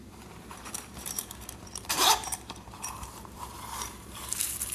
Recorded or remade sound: remade